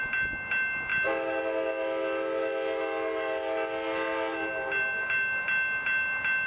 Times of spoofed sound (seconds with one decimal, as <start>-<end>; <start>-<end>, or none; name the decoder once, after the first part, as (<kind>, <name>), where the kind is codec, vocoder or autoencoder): none